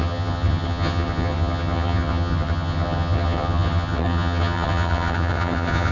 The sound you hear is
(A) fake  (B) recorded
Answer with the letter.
A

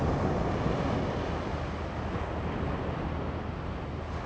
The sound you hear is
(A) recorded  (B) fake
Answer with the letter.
A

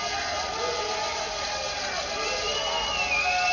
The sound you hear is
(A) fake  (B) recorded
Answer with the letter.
B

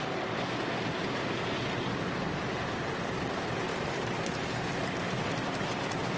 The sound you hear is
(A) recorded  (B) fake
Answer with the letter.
A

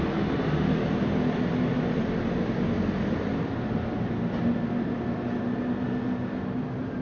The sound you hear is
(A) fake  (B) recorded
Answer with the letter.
B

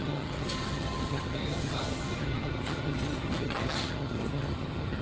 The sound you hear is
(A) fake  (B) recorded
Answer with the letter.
A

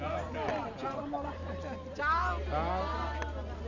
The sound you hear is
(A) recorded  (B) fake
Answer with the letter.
A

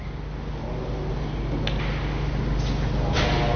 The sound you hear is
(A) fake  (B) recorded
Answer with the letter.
B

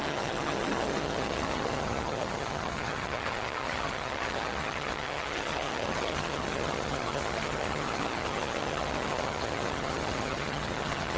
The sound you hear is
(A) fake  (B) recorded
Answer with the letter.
A